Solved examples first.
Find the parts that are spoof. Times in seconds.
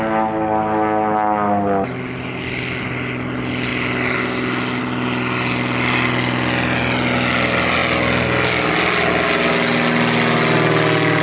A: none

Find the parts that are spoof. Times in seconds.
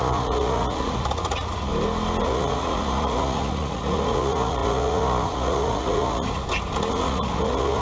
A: 0.0-1.7 (vocoder, Vocos); 2.2-6.4; 6.9-7.8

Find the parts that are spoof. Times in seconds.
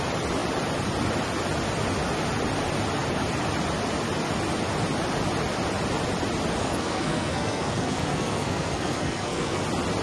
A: 6.6-9.6 (codec, SNAC)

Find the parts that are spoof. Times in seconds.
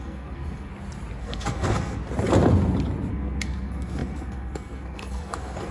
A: 0.0-0.7 (codec, SNAC); 1.2-2.0; 3.1-5.7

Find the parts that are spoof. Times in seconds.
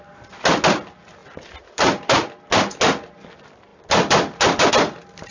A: 1.2-2.3 (vocoder, BigVGAN v2)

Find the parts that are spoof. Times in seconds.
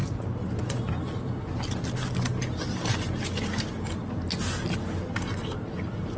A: 0.0-0.6 (vocoder, BigVGAN v2)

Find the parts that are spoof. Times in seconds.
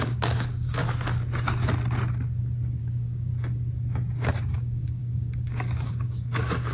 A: 0.0-0.8 (codec, DAC); 2.8-3.3; 4.4-6.7